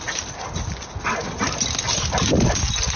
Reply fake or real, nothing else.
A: real